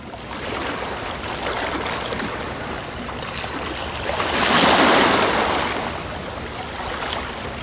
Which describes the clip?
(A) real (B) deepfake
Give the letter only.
A